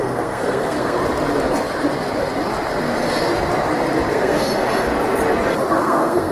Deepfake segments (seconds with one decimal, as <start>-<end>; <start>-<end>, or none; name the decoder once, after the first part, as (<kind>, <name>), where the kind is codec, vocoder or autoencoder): 0.0-1.0 (codec, SNAC); 4.1-4.5; 5.7-6.3